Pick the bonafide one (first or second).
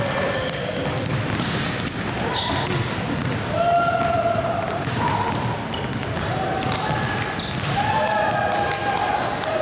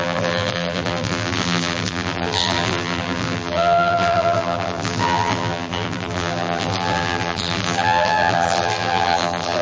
first